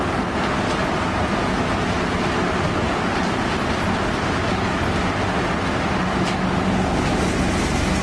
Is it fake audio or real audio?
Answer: real